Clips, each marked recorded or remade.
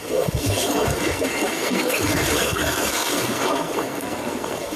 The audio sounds remade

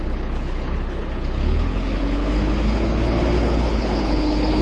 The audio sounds remade